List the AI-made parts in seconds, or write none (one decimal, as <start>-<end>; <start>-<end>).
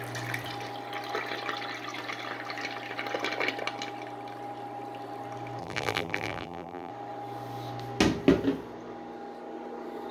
5.6-6.9